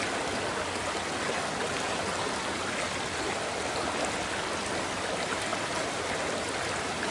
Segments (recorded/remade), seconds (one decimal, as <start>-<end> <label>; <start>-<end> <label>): 0.0-7.1 recorded